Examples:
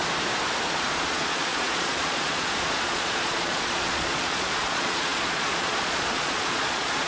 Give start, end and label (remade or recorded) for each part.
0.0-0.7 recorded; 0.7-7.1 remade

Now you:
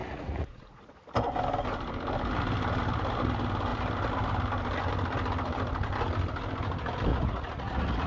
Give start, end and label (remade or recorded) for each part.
0.0-0.8 remade; 0.8-7.1 recorded; 7.1-8.1 remade

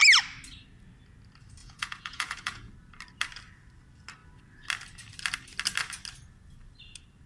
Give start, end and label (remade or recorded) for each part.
0.0-1.6 recorded; 1.6-2.7 remade; 2.7-7.3 recorded

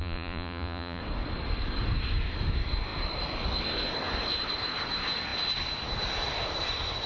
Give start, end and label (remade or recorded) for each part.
0.0-1.0 remade; 1.0-7.1 recorded

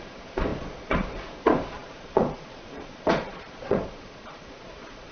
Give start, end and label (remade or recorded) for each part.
0.0-5.1 remade

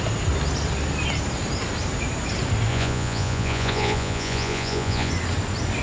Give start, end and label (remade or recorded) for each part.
0.0-2.7 recorded; 2.7-5.1 remade; 5.1-5.8 recorded